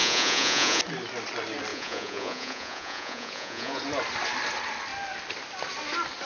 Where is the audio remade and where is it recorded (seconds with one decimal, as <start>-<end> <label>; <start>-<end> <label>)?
0.0-0.8 remade; 0.8-1.7 recorded; 1.7-3.8 remade; 3.8-6.3 recorded